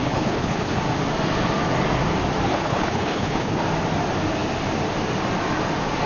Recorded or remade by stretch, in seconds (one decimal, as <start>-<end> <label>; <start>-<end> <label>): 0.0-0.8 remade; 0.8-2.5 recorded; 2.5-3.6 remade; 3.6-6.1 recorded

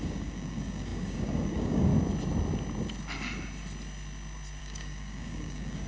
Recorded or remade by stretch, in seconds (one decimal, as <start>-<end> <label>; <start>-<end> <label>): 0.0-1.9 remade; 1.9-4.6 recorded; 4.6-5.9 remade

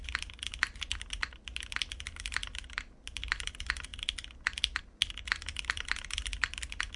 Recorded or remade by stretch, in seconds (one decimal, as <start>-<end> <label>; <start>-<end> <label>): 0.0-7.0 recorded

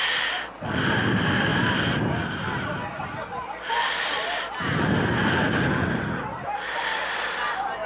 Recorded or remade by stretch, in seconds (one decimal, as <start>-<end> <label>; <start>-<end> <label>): 0.0-7.9 recorded

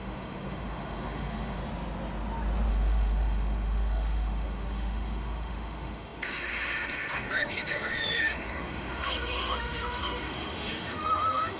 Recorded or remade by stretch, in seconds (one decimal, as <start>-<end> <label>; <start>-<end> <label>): 0.0-1.6 remade; 1.6-2.7 recorded; 2.7-11.6 remade

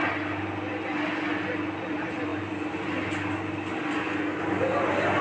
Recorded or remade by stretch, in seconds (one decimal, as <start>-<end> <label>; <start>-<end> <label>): 0.0-5.2 recorded

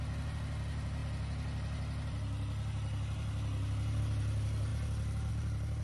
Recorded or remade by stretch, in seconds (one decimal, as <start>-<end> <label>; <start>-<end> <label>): 0.0-5.8 recorded

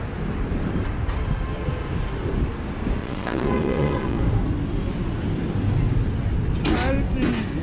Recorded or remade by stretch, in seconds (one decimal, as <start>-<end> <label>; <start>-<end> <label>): 0.0-3.0 recorded; 3.0-4.2 remade; 4.2-7.6 recorded